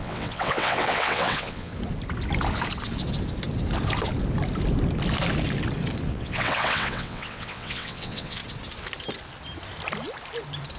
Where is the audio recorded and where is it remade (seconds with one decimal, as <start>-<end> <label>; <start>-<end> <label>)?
0.0-1.7 remade; 1.7-6.1 recorded; 6.1-8.4 remade; 8.4-10.8 recorded